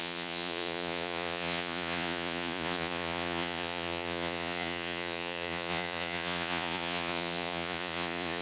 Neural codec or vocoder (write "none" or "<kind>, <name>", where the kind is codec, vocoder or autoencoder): vocoder, Vocos